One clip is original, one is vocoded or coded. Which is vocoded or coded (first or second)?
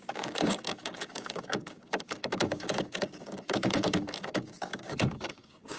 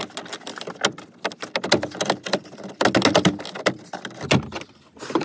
first